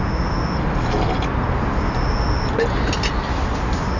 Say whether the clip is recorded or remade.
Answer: recorded